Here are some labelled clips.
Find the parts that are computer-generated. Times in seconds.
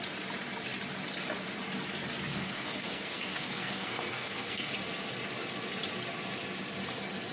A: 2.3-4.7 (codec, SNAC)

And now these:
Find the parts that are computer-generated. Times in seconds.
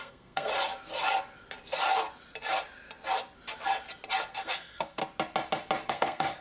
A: 0.0-0.5 (codec, SNAC); 4.3-5.0; 5.9-6.4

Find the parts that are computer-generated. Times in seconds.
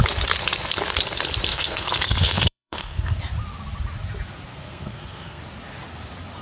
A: 1.5-3.2 (codec, SNAC); 4.5-5.4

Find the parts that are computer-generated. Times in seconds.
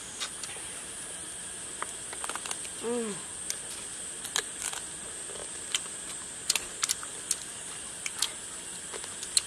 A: none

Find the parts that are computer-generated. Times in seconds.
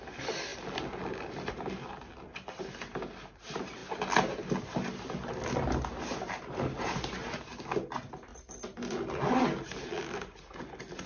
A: none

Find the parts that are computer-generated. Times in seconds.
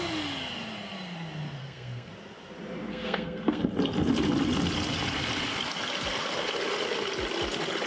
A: 1.6-2.1 (codec, SNAC); 2.9-3.6